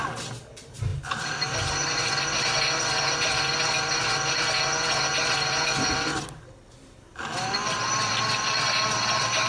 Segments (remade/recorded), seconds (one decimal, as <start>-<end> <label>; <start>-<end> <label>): 0.0-9.5 recorded